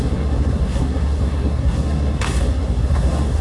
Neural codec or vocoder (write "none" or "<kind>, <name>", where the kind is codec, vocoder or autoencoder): codec, SNAC